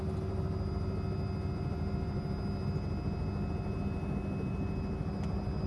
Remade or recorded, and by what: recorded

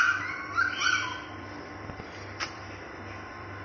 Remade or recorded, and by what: remade, vocoder, BigVGAN v2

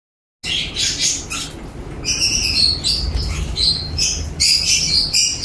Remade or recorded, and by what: recorded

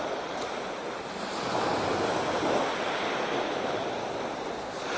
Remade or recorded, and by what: recorded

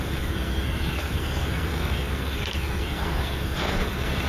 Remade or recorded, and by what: remade, codec, SNAC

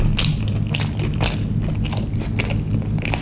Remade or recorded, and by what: recorded